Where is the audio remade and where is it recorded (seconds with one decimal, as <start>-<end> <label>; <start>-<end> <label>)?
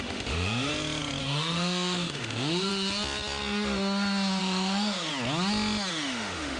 0.0-0.7 remade; 0.7-1.2 recorded; 1.2-2.7 remade; 2.7-4.4 recorded; 4.4-5.1 remade; 5.1-5.9 recorded; 5.9-6.6 remade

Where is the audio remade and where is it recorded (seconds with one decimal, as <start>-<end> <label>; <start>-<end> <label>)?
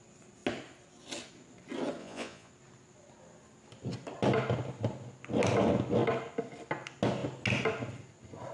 0.0-2.0 recorded; 2.0-2.5 remade; 2.5-8.5 recorded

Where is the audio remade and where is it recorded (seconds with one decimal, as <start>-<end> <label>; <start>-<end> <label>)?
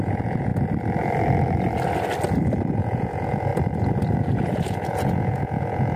0.0-0.5 remade; 0.5-2.7 recorded; 2.7-3.5 remade; 3.5-4.1 recorded; 4.1-6.0 remade